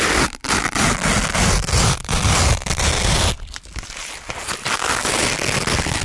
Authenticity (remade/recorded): recorded